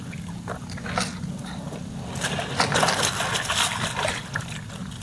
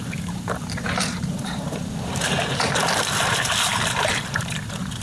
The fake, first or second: second